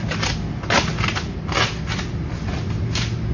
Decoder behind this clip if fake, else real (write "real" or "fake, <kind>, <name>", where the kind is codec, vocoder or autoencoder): real